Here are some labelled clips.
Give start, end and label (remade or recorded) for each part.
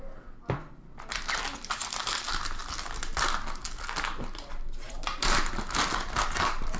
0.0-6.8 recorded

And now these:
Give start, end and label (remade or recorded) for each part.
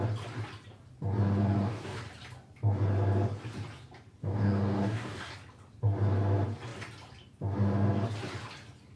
0.0-1.4 recorded; 1.4-2.0 remade; 2.0-4.2 recorded; 4.2-5.3 remade; 5.3-9.0 recorded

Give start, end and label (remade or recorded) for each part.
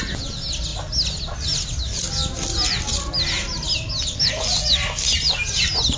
0.0-6.0 recorded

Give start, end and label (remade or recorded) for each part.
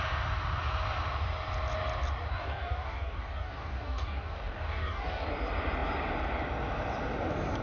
0.0-2.3 recorded; 2.3-5.3 remade; 5.3-7.6 recorded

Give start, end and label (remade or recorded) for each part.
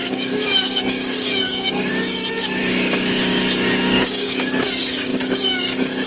0.0-6.1 remade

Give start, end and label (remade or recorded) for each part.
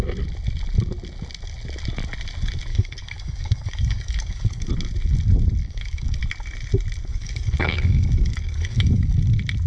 0.0-2.7 recorded; 2.7-4.7 remade; 4.7-5.6 recorded; 5.6-6.2 remade; 6.2-7.1 recorded; 7.1-9.2 remade; 9.2-9.7 recorded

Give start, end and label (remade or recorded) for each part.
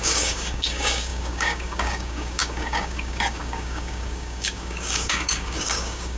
0.0-6.2 remade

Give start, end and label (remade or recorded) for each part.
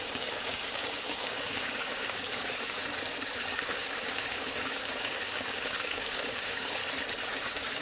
0.0-2.8 remade; 2.8-3.5 recorded; 3.5-6.8 remade; 6.8-7.3 recorded; 7.3-7.8 remade